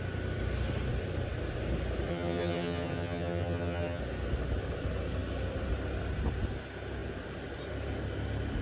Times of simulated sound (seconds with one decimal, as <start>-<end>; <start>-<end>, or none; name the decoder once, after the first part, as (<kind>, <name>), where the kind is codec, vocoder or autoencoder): 2.1-4.0 (vocoder, HiFi-GAN)